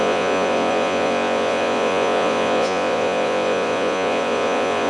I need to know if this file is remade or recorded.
remade